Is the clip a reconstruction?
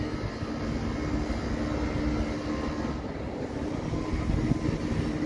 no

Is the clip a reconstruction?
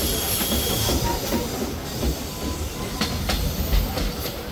no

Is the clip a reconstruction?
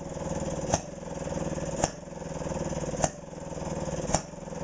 no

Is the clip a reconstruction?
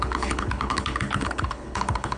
yes